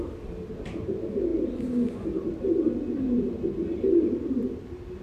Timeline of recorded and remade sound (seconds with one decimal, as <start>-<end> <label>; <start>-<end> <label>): 0.0-5.0 recorded